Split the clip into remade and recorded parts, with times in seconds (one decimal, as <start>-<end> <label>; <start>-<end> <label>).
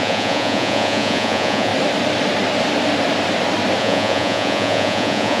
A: 0.0-1.7 remade; 1.7-3.8 recorded; 3.8-5.4 remade